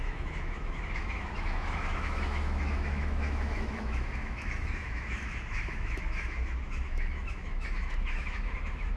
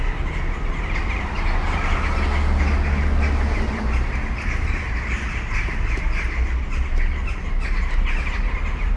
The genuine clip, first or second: second